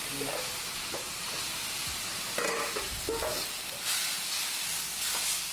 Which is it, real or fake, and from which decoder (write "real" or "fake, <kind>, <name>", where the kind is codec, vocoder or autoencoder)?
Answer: real